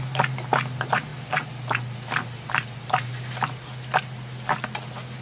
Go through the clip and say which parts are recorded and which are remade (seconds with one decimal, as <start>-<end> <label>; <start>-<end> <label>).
0.0-5.2 recorded